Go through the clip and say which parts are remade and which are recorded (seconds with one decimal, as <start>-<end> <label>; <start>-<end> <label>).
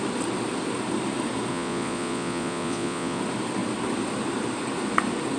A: 0.0-1.5 recorded; 1.5-3.2 remade; 3.2-5.4 recorded